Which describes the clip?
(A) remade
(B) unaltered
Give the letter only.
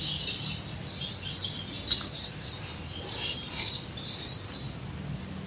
B